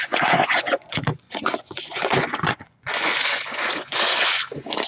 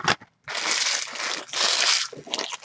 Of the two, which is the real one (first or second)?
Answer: second